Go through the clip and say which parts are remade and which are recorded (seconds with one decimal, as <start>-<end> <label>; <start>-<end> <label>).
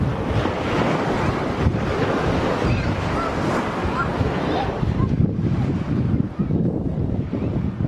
0.0-7.9 recorded